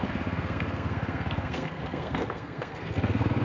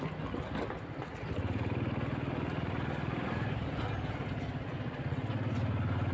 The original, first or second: second